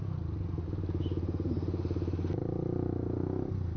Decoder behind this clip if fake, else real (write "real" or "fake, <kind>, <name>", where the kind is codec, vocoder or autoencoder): real